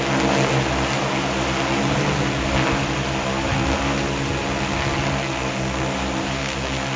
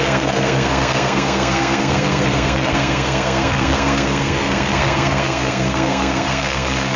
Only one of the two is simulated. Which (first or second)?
second